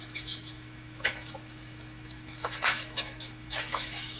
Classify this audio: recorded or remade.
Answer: remade